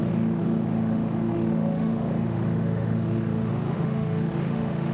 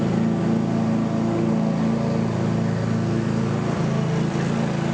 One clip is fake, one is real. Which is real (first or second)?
second